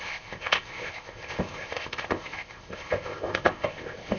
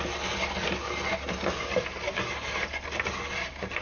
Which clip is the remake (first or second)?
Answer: first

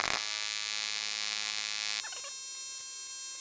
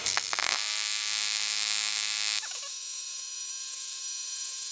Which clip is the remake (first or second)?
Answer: second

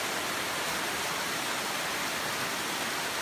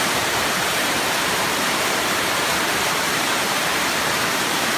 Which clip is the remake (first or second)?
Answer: second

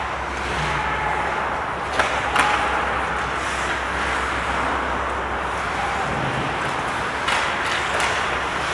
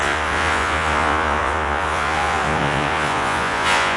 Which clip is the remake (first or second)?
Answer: second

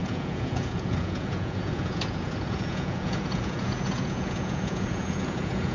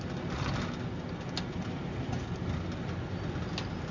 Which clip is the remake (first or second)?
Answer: first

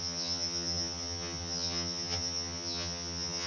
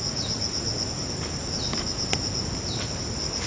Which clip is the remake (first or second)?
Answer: first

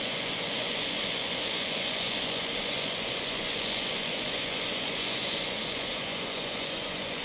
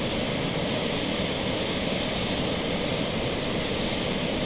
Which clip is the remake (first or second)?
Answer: first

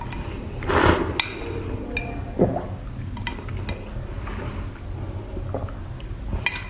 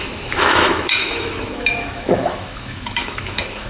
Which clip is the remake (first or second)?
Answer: second